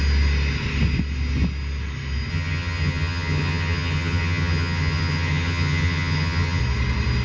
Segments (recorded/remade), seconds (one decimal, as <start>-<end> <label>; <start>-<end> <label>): 0.0-2.3 recorded; 2.3-6.6 remade; 6.6-7.2 recorded

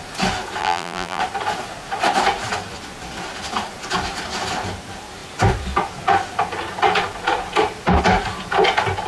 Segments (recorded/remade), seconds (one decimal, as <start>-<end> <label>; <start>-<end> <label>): 0.0-0.6 recorded; 0.6-1.2 remade; 1.2-9.1 recorded

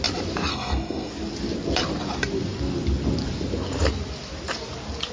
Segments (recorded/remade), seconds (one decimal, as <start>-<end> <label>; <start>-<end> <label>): 0.0-0.5 recorded; 0.5-1.1 remade; 1.1-5.1 recorded